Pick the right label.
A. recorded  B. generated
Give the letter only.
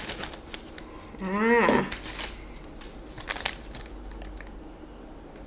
A